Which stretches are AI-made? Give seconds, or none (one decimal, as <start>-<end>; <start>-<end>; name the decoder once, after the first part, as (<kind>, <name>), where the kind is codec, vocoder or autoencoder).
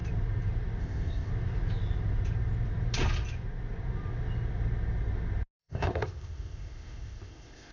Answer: 0.8-1.3 (codec, ZipCodec); 5.6-7.7